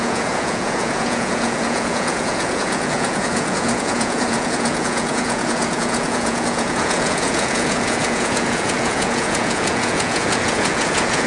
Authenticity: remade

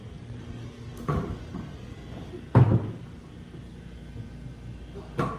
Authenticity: recorded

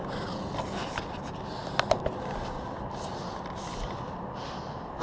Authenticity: recorded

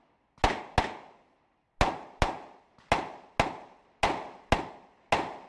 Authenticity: recorded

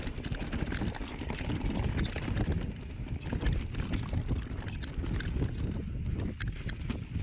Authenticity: recorded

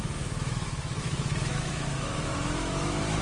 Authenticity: remade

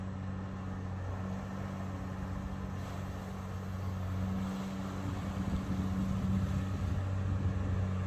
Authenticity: recorded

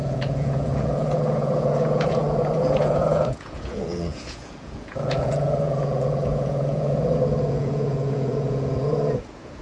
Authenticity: remade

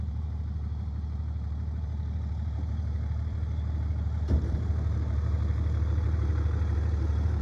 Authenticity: remade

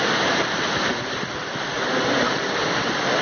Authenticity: recorded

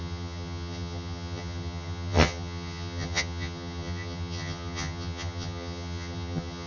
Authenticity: remade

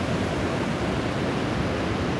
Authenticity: recorded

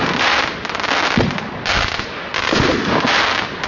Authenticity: recorded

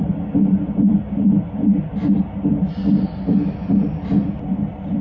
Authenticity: recorded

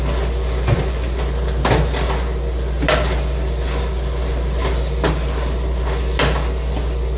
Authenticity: recorded